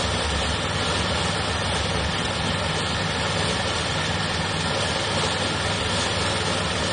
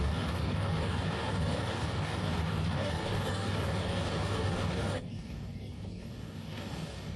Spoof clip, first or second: second